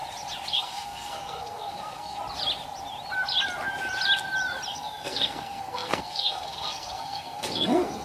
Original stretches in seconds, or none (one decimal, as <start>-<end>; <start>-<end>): 0.0-0.5; 2.2-4.7